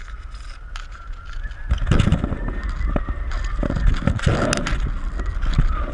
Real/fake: real